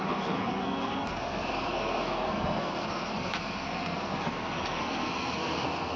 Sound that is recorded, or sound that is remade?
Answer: remade